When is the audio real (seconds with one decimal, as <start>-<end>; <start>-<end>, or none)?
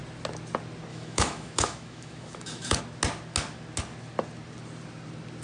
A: 0.0-0.9; 2.8-5.4